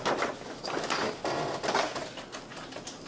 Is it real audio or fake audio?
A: real